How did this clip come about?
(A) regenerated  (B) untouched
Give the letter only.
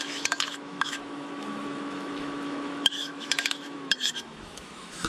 A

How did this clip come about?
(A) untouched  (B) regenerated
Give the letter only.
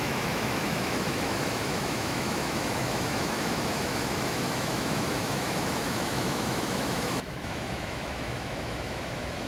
B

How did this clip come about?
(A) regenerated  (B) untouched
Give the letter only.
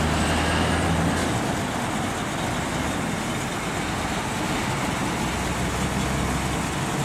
B